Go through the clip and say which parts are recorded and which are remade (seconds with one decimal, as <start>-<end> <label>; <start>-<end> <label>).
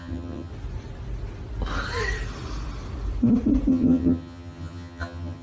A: 0.0-0.5 remade; 0.5-3.7 recorded; 3.7-5.4 remade